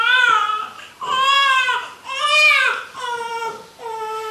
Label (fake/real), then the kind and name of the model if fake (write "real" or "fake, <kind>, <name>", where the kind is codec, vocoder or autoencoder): real